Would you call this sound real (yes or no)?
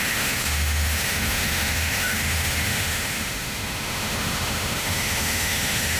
no